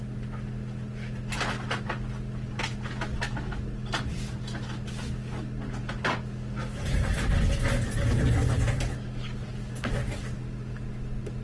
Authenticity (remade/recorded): recorded